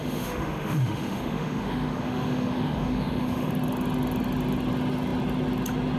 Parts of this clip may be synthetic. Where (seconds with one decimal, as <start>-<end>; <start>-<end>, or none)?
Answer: 0.0-3.5